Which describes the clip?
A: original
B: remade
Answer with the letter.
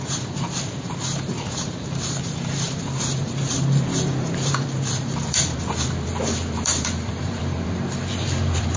B